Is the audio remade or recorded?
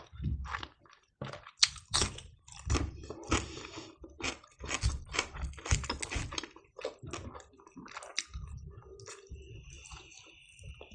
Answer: recorded